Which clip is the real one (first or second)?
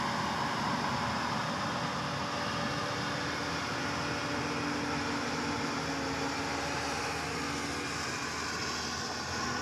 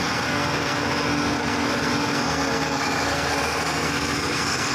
first